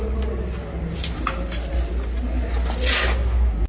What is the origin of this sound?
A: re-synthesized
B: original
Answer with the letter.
B